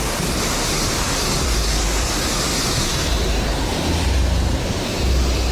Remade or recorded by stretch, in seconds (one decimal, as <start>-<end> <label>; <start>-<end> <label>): 0.0-2.5 recorded; 2.5-3.0 remade; 3.0-5.5 recorded